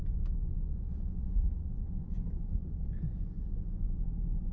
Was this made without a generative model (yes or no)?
no